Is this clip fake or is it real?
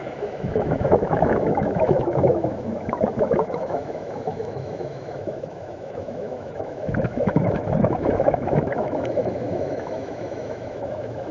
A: fake